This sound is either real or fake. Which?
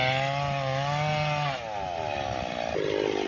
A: real